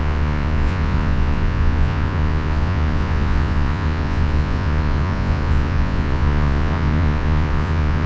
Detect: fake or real fake